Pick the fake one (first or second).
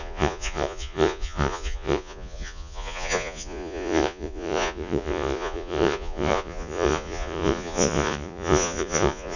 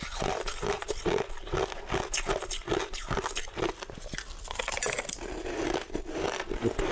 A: first